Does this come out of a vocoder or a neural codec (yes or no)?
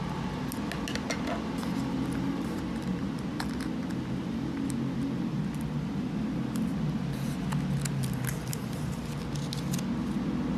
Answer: no